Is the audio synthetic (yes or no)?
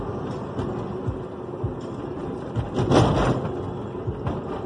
no